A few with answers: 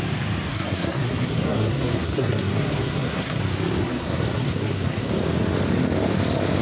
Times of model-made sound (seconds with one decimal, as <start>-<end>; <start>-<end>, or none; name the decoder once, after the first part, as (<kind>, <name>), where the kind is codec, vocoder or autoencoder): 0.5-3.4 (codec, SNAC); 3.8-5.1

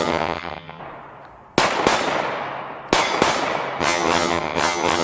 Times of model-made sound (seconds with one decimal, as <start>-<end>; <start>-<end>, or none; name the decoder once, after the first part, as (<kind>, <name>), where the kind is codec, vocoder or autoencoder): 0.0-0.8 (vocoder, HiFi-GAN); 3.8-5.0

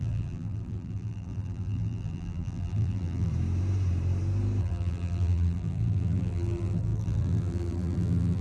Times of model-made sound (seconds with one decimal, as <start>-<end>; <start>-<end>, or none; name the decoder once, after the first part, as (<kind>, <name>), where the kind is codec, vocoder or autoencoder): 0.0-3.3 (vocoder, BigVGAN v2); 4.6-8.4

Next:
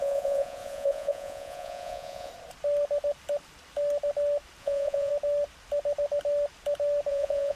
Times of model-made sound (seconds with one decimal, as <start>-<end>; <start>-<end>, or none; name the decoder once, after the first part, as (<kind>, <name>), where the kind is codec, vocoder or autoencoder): 0.0-2.3 (vocoder, Vocos); 4.6-5.1; 7.1-7.6

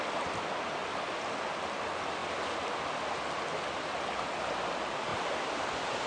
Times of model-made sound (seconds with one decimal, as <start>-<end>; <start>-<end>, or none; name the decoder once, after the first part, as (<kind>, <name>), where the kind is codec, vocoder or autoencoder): none

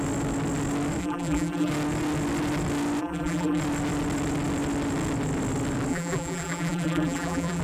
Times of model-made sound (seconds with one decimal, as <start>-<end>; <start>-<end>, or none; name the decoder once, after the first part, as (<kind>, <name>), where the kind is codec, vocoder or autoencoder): 1.0-1.7 (vocoder, BigVGAN v2); 3.0-3.6; 5.9-7.6